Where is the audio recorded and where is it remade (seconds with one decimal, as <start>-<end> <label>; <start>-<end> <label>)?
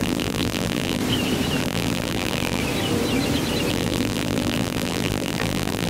0.0-1.0 remade; 1.0-1.6 recorded; 1.6-2.6 remade; 2.6-3.7 recorded; 3.7-5.9 remade